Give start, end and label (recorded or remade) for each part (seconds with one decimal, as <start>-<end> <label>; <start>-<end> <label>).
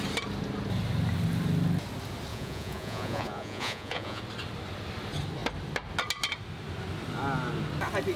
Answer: 0.0-2.3 recorded; 2.3-4.2 remade; 4.2-8.2 recorded